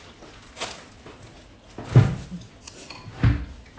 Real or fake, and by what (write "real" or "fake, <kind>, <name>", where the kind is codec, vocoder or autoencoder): real